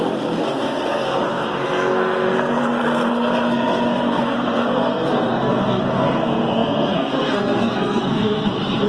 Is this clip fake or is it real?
fake